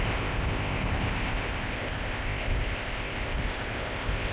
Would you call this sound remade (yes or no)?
yes